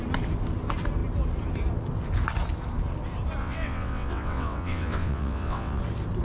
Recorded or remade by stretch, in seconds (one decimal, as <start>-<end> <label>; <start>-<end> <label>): 0.0-3.4 recorded; 3.4-5.8 remade; 5.8-6.2 recorded